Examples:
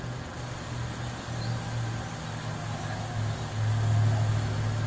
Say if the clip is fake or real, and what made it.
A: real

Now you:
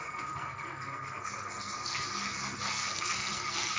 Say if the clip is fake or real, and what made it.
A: fake, codec, SNAC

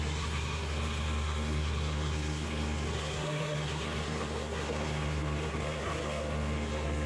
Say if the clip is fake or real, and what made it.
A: fake, codec, SNAC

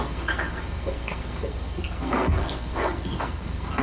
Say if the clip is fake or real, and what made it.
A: fake, codec, SNAC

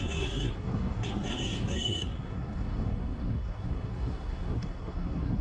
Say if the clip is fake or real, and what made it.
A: fake, codec, SNAC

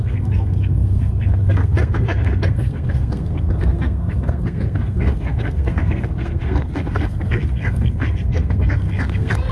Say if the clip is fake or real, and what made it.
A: fake, codec, SNAC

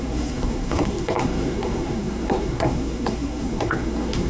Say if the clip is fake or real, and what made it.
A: fake, codec, SNAC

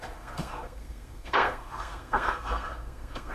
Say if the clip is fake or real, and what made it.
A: fake, codec, SNAC